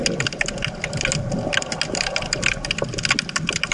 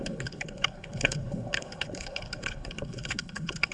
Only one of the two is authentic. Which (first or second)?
first